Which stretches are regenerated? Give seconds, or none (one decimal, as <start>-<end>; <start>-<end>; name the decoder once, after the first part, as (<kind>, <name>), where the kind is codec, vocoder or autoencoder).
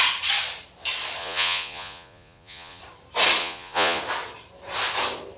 1.2-2.8 (vocoder, Vocos); 3.4-4.0